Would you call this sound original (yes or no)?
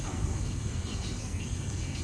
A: no